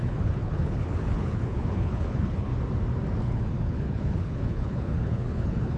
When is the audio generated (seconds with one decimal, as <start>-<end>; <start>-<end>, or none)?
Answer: 0.0-2.5; 3.2-5.8